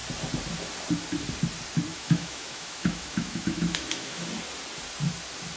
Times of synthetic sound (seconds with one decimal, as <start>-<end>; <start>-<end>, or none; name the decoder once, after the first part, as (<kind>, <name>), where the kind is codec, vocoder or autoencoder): 1.9-4.3 (autoencoder, DAC-VAE)